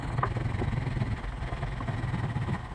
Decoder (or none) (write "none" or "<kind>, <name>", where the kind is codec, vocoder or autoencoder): none